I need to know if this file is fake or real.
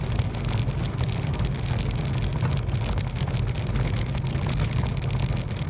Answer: real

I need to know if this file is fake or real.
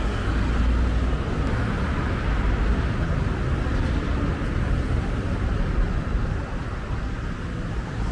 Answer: real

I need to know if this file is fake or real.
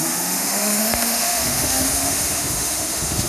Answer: fake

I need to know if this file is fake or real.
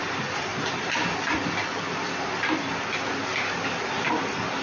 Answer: real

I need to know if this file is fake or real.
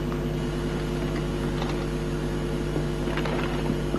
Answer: real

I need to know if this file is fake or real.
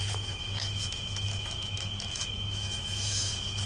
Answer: fake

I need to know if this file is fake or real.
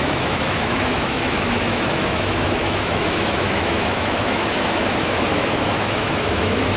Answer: fake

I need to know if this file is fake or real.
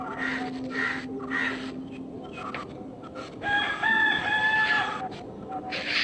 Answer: real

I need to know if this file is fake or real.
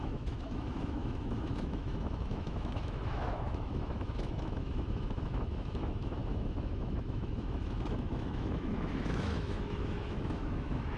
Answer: fake